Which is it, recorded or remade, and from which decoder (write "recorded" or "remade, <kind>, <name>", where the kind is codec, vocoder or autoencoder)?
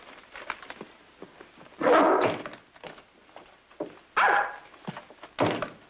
recorded